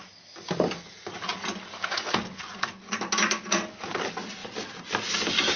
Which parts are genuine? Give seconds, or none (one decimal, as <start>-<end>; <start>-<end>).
0.0-5.6